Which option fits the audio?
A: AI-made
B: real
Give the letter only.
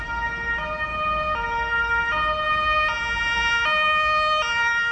B